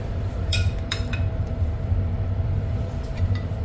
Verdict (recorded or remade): remade